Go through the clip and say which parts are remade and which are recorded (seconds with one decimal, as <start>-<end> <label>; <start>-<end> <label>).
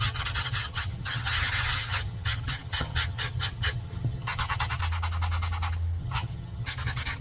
0.0-4.8 remade; 4.8-6.0 recorded; 6.0-7.2 remade